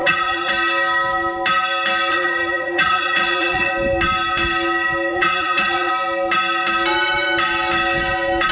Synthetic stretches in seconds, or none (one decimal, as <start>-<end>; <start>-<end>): 0.0-0.5; 2.1-3.7; 5.1-5.9